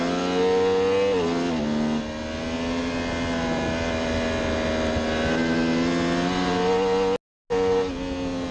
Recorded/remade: recorded